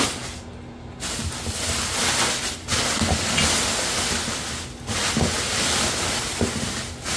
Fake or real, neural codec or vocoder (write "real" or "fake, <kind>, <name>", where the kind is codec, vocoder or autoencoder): real